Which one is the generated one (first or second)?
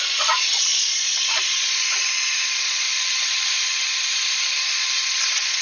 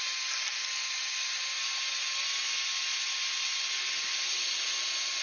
first